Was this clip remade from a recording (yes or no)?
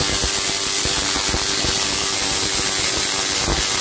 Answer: no